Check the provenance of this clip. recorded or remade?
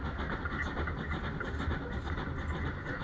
recorded